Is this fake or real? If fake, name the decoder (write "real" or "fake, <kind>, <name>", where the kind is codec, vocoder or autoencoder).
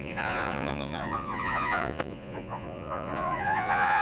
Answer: fake, vocoder, Vocos